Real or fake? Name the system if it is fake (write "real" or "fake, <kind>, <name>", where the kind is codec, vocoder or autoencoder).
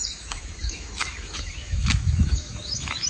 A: fake, autoencoder, DAC-VAE